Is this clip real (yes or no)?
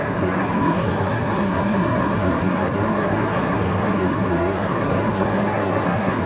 no